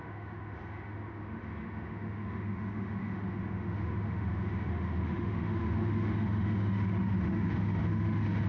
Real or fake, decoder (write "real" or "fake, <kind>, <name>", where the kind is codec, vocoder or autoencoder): fake, autoencoder, DAC-VAE